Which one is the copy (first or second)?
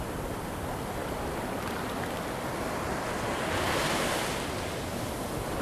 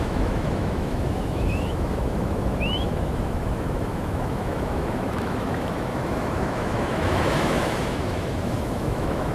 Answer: second